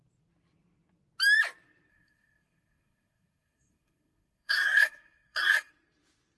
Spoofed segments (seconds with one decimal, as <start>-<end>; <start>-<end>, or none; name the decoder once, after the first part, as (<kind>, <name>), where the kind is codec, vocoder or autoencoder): 1.9-5.7 (codec, SNAC)